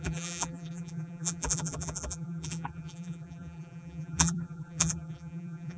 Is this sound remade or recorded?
remade